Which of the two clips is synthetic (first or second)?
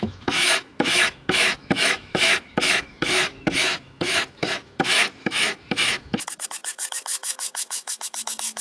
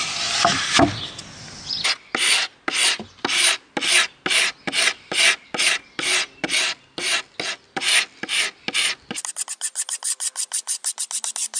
first